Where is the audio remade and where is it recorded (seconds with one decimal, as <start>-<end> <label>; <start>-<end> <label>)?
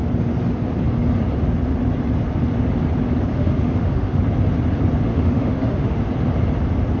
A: 0.0-3.3 recorded; 3.3-4.2 remade; 4.2-5.1 recorded; 5.1-6.0 remade; 6.0-7.0 recorded